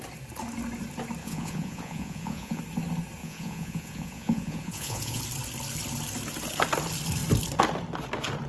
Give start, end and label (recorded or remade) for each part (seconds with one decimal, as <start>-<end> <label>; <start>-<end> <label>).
0.0-1.2 recorded; 1.2-2.6 remade; 2.6-3.2 recorded; 3.2-5.2 remade; 5.2-8.5 recorded